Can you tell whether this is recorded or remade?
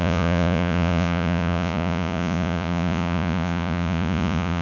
remade